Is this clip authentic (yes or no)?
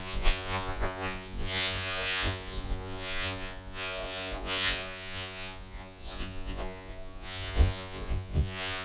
no